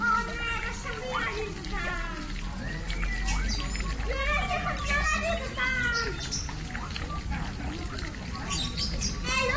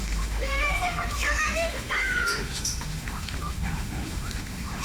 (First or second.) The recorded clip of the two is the first